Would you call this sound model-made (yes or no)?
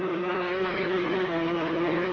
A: yes